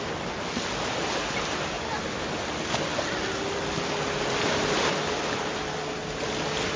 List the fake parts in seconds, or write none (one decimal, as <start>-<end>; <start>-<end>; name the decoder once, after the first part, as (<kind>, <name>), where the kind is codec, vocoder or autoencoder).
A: none